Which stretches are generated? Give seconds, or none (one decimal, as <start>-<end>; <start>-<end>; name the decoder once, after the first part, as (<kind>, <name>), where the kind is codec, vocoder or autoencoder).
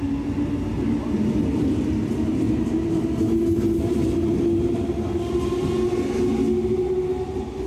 none